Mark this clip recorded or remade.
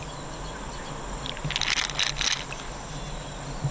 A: recorded